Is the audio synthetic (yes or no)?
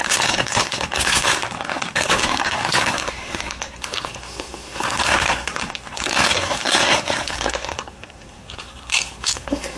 yes